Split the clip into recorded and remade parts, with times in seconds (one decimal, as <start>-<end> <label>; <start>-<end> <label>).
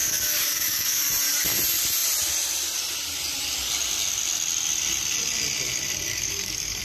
0.0-1.1 remade; 1.1-6.1 recorded; 6.1-6.8 remade